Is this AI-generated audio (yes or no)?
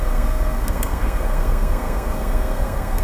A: yes